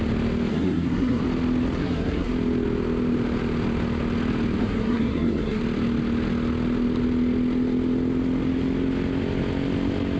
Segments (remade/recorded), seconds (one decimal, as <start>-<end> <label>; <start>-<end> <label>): 0.0-0.5 recorded; 0.5-1.2 remade; 1.2-1.8 recorded; 1.8-2.3 remade; 2.3-4.6 recorded; 4.6-5.6 remade; 5.6-10.2 recorded